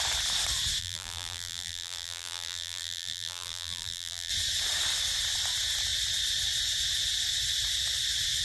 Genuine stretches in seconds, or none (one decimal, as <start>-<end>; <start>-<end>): 0.0-0.8; 4.3-8.4